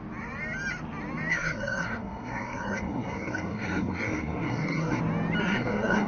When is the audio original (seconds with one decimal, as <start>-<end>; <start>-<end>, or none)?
0.0-1.3; 5.0-5.4